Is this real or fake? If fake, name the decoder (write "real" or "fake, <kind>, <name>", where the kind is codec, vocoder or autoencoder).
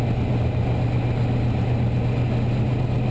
real